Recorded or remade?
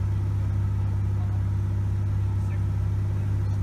recorded